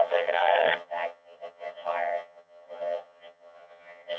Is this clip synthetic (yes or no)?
yes